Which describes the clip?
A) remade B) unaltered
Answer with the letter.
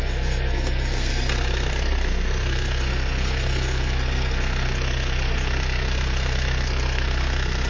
A